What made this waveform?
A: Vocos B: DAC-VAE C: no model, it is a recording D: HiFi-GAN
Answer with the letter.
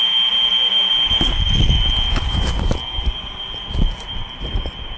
C